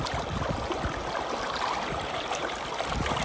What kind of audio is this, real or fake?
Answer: real